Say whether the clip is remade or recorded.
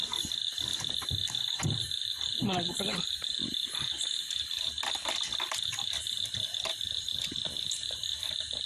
recorded